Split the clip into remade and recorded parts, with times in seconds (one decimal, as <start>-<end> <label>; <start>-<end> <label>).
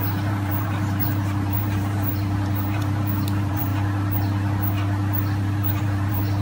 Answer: 0.0-3.7 remade; 3.7-5.8 recorded; 5.8-6.4 remade